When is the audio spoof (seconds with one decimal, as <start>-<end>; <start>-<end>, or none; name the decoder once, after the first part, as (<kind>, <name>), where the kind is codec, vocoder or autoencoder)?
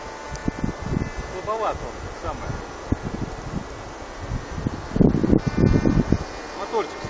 none